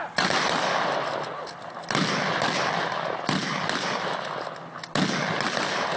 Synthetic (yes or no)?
no